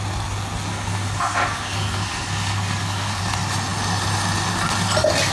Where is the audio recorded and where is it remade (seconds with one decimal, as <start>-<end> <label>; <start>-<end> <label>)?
0.0-0.7 recorded; 0.7-3.2 remade; 3.2-5.3 recorded